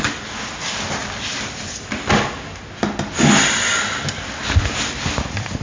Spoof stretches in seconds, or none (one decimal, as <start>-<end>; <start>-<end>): none